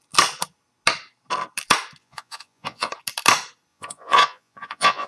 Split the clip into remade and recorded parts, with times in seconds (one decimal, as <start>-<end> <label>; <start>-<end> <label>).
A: 0.0-2.0 recorded; 2.0-2.9 remade; 2.9-3.7 recorded; 3.7-5.1 remade